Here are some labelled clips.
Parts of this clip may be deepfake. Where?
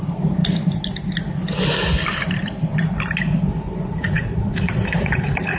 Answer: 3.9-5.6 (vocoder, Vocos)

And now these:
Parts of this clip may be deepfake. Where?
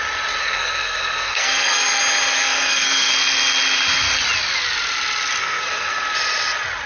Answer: 0.4-2.0 (codec, SNAC); 2.4-3.1; 5.4-6.1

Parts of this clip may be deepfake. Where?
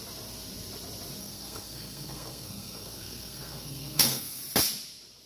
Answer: 1.2-4.4 (codec, SNAC)